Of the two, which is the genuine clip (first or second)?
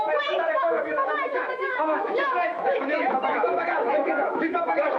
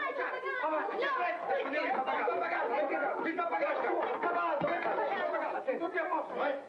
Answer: second